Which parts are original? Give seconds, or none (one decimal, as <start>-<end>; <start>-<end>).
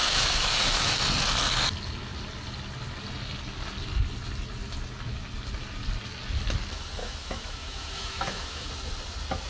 1.0-7.0; 8.7-9.5